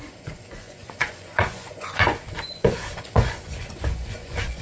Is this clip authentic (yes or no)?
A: no